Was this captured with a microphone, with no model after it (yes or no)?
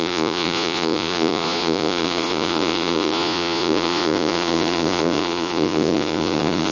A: no